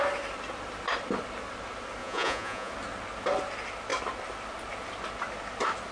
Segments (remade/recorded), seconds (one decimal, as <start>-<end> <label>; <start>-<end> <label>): 0.0-2.0 recorded; 2.0-2.7 remade; 2.7-5.9 recorded